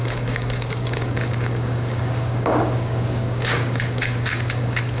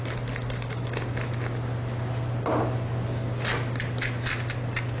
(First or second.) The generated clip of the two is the first